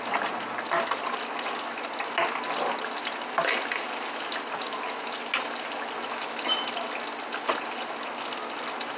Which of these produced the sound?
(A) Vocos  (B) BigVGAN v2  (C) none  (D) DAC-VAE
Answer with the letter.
C